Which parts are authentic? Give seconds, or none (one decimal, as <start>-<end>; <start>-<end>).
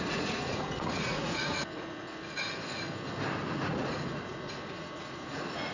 2.4-3.4